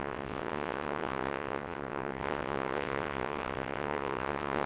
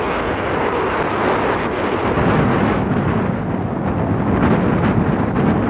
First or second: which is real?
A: second